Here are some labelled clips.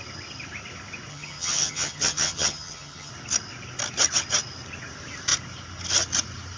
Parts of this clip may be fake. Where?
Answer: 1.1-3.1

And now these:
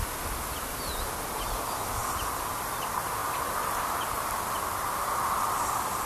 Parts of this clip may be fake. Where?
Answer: none

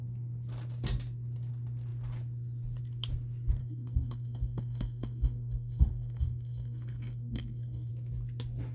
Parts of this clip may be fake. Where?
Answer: 3.6-7.9

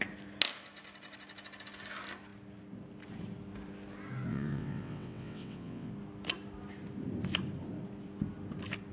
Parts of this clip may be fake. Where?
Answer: 4.3-5.9

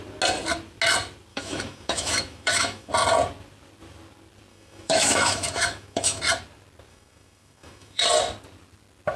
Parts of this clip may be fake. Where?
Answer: 1.3-2.9; 4.5-6.2; 6.9-8.0

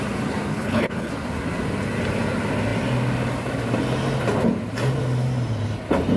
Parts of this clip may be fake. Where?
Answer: 0.5-1.1

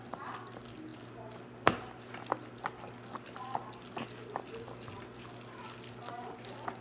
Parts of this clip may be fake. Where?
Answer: none

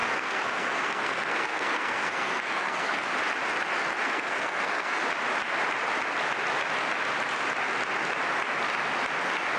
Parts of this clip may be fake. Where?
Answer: 0.0-3.1; 4.0-5.0